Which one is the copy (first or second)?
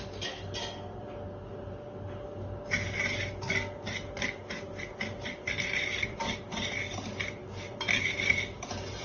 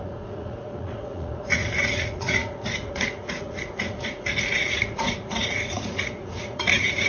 second